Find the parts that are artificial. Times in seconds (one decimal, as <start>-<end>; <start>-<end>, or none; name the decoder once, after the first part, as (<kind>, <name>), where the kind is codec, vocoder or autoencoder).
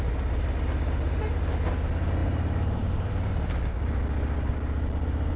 2.2-3.5 (vocoder, BigVGAN v2)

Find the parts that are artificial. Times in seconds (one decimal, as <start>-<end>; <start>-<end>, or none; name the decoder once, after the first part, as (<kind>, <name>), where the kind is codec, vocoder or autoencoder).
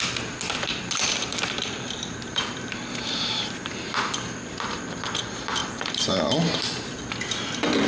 1.2-4.0 (vocoder, BigVGAN v2); 5.6-7.0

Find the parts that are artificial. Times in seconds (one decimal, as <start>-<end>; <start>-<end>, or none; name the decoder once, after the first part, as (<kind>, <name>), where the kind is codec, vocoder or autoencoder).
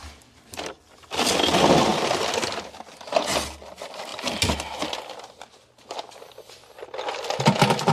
1.9-3.1 (vocoder, BigVGAN v2)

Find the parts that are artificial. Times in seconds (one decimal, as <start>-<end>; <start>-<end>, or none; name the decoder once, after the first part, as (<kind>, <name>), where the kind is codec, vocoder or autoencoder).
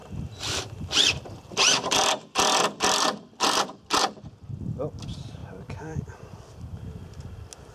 0.0-4.6 (vocoder, BigVGAN v2); 5.4-6.6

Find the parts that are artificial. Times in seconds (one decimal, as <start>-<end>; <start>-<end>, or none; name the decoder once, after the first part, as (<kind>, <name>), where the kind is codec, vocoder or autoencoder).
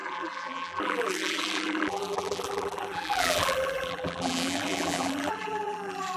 0.0-6.2 (vocoder, BigVGAN v2)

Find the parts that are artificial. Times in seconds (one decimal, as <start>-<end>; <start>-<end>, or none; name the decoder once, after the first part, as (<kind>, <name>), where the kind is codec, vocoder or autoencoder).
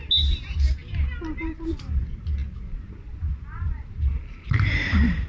0.8-2.0 (vocoder, BigVGAN v2); 2.4-5.3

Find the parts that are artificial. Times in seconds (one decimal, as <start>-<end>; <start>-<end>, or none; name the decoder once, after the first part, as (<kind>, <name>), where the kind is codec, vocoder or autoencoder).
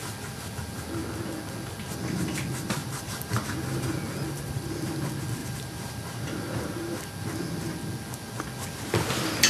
2.8-3.5 (vocoder, BigVGAN v2); 5.4-7.1